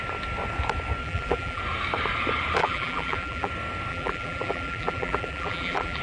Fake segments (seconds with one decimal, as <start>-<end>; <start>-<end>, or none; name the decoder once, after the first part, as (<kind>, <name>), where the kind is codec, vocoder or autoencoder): 1.0-1.6 (vocoder, BigVGAN v2); 2.6-3.5; 3.9-6.0